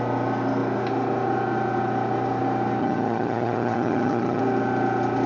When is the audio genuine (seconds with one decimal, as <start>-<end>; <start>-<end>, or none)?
0.0-2.8; 4.4-5.3